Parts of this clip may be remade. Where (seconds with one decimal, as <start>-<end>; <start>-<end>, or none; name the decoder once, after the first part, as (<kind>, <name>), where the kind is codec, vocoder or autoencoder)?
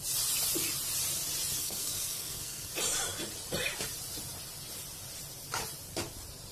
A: 1.6-2.7 (codec, SNAC)